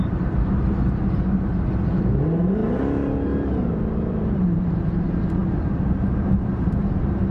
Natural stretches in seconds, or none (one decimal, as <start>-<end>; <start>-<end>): 2.6-4.1